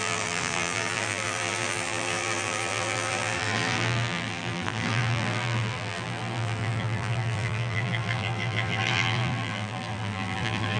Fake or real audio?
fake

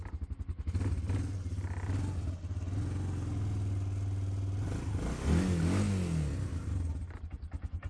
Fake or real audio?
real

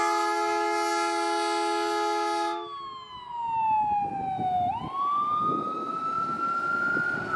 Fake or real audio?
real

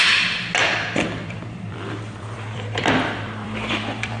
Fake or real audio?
fake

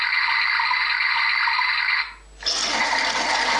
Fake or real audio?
real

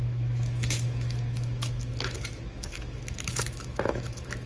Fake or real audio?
fake